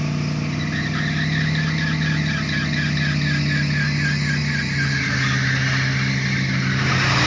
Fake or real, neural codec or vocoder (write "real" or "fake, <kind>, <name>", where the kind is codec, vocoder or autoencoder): real